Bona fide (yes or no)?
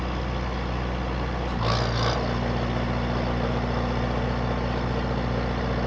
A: yes